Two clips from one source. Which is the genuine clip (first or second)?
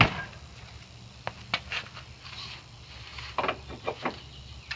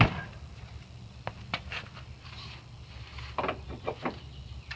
first